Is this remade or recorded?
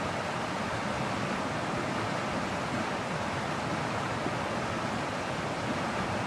recorded